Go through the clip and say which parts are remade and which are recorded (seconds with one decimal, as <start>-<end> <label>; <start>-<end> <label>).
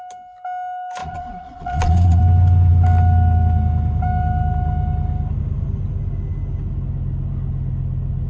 0.0-1.0 recorded; 1.0-2.2 remade; 2.2-8.3 recorded